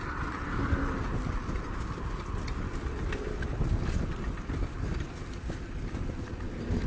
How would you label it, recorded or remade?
recorded